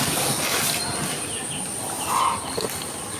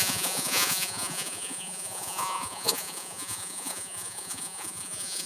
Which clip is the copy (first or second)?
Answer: second